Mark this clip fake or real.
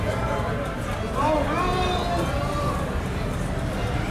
real